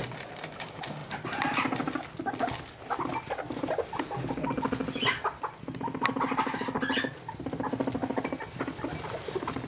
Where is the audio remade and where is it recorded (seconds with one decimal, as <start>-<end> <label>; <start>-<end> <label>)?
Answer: 0.0-9.7 recorded